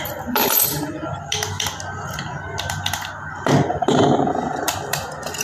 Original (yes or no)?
no